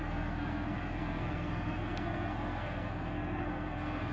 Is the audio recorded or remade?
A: remade